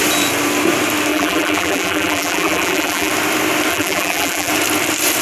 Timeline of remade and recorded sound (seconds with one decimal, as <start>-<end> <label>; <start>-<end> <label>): 0.0-1.1 recorded; 1.1-3.1 remade; 3.1-3.7 recorded; 3.7-4.5 remade; 4.5-5.2 recorded